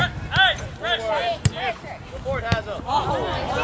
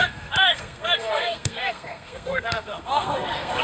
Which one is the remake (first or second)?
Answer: second